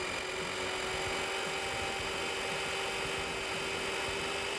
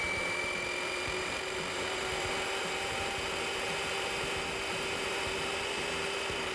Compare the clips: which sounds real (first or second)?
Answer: first